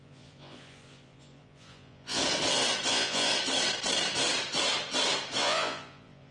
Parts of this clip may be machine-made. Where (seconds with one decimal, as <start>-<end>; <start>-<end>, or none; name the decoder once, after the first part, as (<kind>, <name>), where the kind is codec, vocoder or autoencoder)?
0.0-2.2 (vocoder, Vocos); 2.9-3.3; 5.4-6.3